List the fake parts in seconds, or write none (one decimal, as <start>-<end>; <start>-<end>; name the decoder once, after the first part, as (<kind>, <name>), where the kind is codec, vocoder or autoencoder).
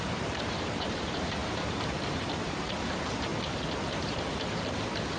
0.0-3.3 (vocoder, BigVGAN v2)